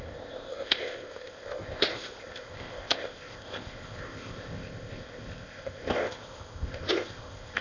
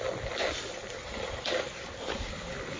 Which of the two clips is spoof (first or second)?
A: first